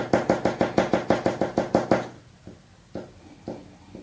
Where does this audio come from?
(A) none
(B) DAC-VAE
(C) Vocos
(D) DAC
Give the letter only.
A